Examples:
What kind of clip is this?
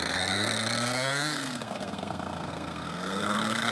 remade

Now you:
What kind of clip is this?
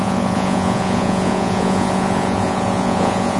remade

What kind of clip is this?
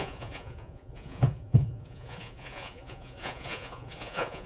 remade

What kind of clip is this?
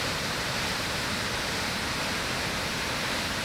remade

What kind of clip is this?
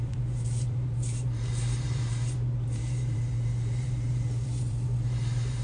remade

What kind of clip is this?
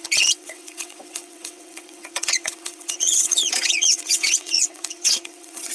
remade